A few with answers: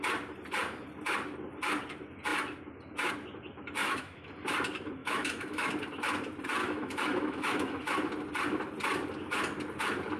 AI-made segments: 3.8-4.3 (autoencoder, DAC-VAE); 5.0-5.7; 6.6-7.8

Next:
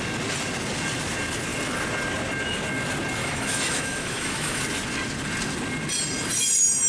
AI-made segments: 3.2-4.6 (autoencoder, DAC-VAE)